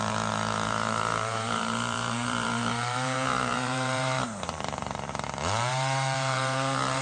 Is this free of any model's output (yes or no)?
no